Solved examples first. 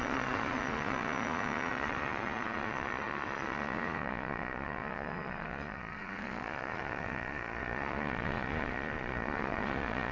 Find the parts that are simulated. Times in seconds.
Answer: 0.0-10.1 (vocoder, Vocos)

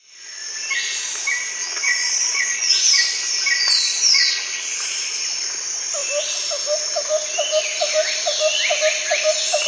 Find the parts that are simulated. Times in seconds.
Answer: 1.6-2.8 (vocoder, Vocos); 3.6-4.8

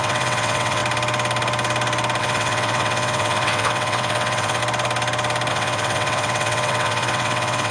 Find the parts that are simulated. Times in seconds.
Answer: 0.0-0.8 (vocoder, WaveNeXt); 2.2-4.6; 5.5-7.7

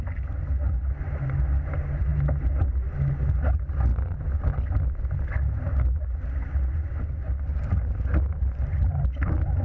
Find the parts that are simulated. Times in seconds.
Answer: none

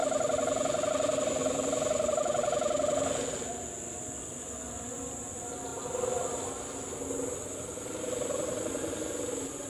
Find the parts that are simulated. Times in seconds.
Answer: 1.4-2.2 (vocoder, BigVGAN v2)